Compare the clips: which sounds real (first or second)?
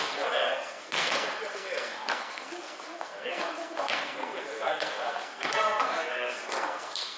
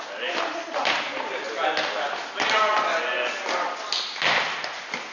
second